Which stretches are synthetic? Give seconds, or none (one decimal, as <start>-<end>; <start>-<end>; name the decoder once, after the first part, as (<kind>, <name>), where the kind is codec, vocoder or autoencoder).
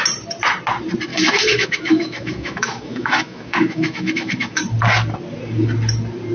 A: 1.1-4.6 (autoencoder, DAC-VAE)